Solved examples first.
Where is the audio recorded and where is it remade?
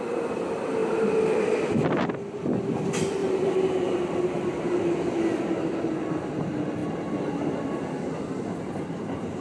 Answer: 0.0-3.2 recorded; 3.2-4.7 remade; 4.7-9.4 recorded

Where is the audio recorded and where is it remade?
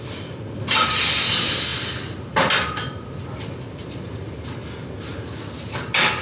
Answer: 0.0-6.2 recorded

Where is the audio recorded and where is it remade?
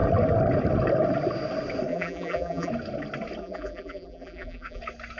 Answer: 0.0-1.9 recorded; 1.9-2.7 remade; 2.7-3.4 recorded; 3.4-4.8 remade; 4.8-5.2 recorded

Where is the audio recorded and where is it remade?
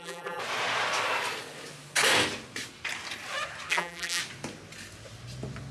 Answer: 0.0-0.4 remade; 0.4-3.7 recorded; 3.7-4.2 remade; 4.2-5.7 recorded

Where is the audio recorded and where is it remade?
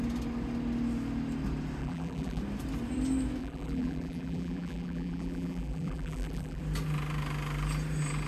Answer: 0.0-1.8 recorded; 1.8-2.4 remade; 2.4-3.4 recorded; 3.4-6.6 remade; 6.6-8.3 recorded